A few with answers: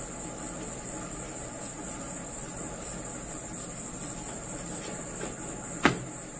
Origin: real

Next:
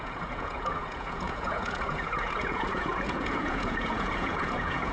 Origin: fake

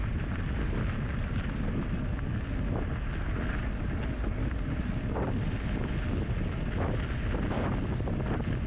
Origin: real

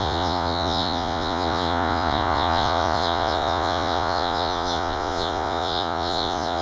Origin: fake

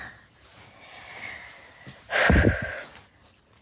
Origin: real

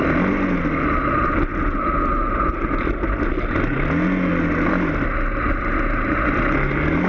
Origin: real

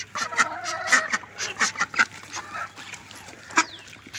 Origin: fake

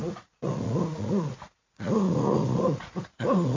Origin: fake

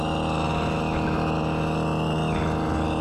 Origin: real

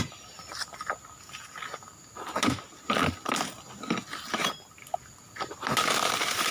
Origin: real